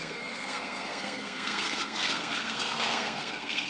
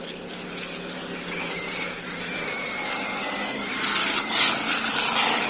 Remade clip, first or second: first